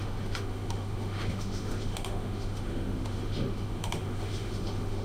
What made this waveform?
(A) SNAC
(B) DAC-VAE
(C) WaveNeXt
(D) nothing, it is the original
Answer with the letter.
B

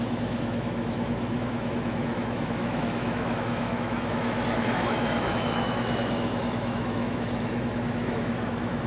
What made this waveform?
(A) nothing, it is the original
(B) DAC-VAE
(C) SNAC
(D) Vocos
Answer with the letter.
B